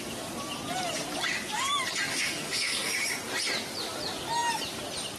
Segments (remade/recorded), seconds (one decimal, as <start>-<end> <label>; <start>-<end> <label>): 0.0-2.1 recorded; 2.1-2.9 remade; 2.9-5.2 recorded